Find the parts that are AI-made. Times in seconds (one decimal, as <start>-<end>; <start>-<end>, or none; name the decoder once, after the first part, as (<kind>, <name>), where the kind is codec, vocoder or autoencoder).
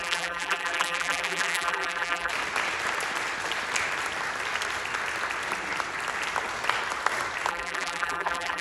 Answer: 0.0-2.3 (vocoder, BigVGAN v2); 7.5-8.6